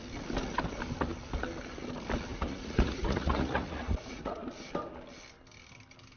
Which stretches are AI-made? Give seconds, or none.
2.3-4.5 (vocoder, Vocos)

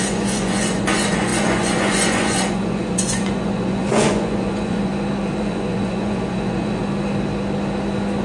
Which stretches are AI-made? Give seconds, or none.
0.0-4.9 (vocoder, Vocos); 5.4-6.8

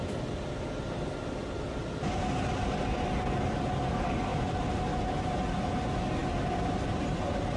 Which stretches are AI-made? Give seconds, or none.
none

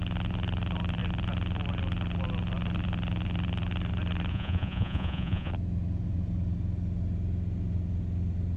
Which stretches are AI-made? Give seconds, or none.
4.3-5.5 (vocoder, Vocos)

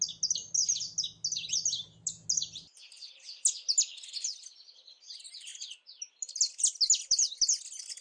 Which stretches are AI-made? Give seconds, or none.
none

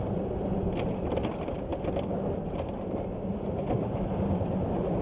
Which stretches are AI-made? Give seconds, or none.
none